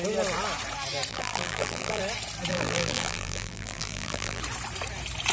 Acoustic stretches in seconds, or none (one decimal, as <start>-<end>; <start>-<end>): 0.0-1.1; 2.0-2.5; 4.4-5.3